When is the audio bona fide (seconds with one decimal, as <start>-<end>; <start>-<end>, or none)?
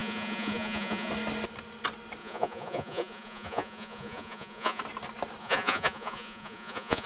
1.1-2.2; 4.8-5.4